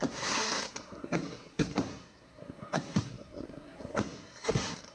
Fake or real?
fake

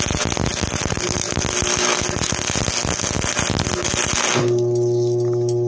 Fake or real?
real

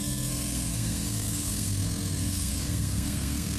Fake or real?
fake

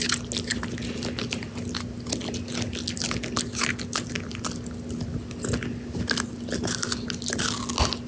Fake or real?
real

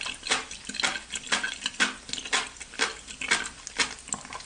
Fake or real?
real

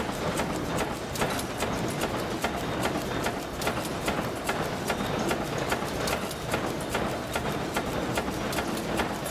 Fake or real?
real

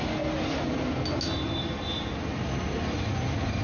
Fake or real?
real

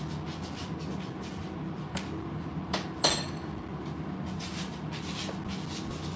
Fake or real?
real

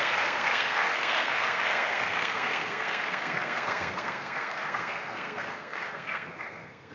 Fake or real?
fake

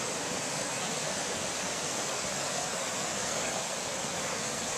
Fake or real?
fake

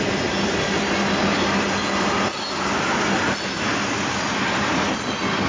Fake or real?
real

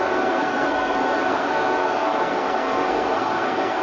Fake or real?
fake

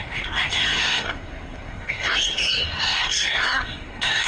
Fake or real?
fake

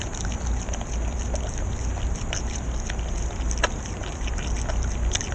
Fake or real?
real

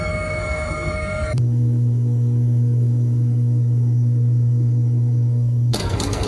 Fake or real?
fake